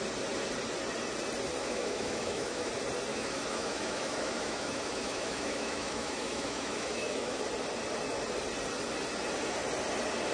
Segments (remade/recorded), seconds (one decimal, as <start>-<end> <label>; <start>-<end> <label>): 0.0-1.6 recorded; 1.6-2.7 remade; 2.7-3.1 recorded; 3.1-7.4 remade; 7.4-10.3 recorded